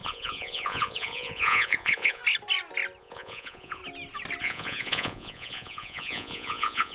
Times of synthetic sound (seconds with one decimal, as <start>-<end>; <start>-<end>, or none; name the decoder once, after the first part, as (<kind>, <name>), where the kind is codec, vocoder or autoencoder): 0.0-2.2 (vocoder, Vocos); 3.0-3.8; 4.4-6.9